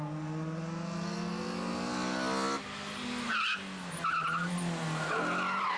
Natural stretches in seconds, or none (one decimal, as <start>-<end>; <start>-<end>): 0.0-5.8